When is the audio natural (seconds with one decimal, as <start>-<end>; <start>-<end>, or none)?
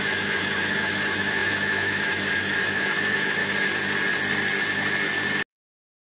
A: 3.4-5.5